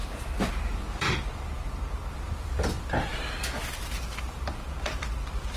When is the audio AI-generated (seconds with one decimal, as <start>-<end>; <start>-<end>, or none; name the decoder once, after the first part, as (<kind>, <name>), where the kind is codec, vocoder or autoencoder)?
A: 0.9-3.1 (vocoder, BigVGAN v2); 4.2-5.6